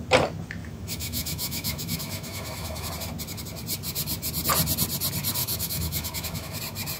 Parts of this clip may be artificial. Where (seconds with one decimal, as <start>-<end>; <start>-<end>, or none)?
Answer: 0.6-2.9; 5.4-6.6